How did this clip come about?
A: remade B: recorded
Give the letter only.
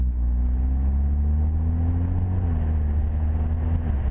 B